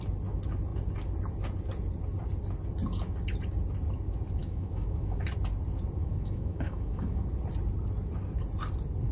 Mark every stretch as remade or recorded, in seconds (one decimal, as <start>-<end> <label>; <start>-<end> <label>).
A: 0.0-4.4 recorded; 4.4-5.2 remade; 5.2-6.0 recorded; 6.0-7.3 remade; 7.3-9.1 recorded